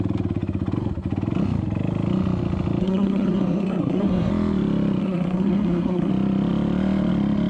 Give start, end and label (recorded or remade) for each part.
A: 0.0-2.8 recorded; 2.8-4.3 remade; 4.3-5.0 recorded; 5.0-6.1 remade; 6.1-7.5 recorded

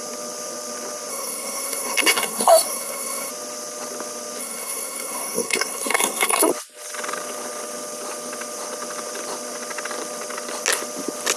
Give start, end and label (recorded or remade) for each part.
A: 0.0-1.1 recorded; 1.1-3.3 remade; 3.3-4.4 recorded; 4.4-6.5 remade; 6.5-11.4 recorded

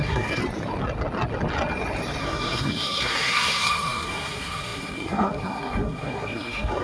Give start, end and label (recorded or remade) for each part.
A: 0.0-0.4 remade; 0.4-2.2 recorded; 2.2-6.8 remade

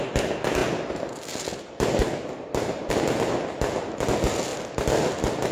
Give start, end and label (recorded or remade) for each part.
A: 0.0-5.5 recorded